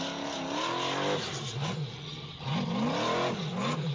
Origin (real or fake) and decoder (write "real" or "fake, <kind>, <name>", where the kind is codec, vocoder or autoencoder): real